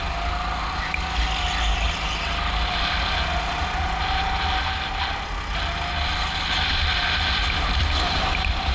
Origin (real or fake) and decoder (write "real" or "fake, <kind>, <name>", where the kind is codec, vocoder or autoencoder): real